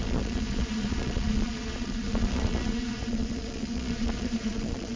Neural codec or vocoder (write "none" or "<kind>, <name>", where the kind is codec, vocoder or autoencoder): vocoder, Vocos